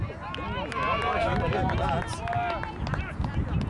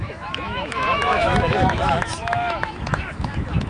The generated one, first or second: second